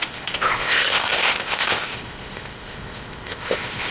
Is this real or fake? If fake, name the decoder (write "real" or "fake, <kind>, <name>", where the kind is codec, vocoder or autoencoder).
fake, codec, ZipCodec